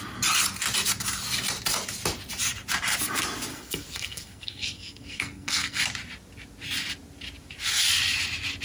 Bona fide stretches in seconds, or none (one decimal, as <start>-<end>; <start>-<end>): 0.0-3.5; 5.8-8.6